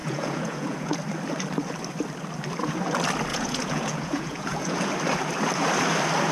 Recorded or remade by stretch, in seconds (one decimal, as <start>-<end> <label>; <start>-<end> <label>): 0.0-1.0 remade; 1.0-3.3 recorded; 3.3-4.9 remade; 4.9-6.3 recorded